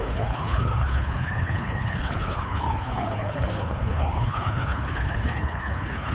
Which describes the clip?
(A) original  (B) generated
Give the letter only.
B